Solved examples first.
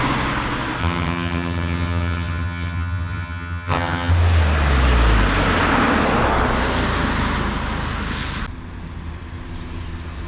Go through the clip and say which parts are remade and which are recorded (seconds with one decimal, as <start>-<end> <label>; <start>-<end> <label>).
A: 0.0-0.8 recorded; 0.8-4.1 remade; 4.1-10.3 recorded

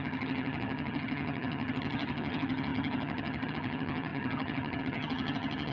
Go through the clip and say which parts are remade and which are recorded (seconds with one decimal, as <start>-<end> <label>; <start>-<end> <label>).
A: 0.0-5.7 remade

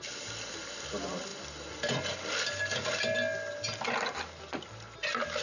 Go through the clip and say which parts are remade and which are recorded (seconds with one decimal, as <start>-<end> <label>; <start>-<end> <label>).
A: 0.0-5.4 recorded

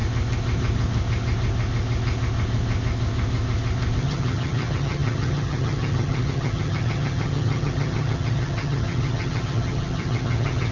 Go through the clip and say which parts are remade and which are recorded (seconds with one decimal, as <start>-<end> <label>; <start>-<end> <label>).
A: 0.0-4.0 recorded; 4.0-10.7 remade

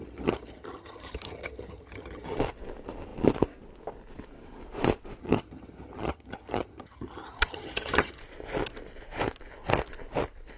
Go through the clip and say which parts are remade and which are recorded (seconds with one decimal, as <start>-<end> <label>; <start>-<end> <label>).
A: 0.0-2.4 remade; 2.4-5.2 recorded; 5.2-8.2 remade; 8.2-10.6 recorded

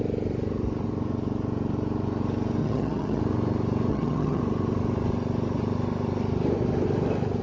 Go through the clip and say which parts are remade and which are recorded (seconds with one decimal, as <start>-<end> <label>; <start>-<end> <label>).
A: 0.0-2.6 recorded; 2.6-3.2 remade; 3.2-3.9 recorded; 3.9-4.4 remade; 4.4-7.4 recorded